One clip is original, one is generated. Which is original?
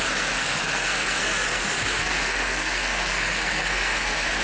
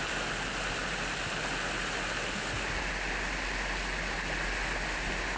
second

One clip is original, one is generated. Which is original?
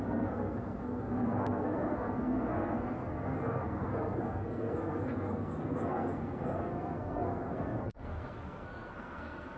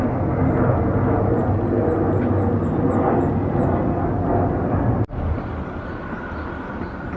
second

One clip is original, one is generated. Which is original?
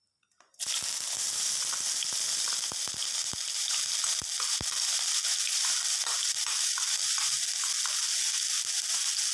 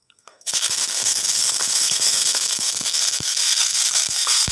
first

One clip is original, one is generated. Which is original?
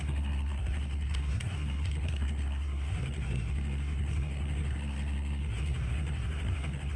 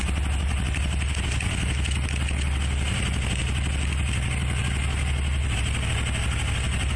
second